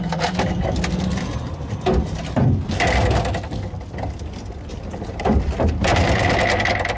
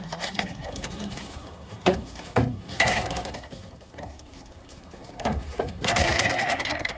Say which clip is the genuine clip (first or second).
first